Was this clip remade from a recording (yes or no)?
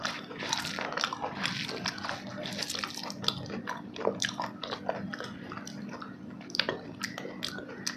no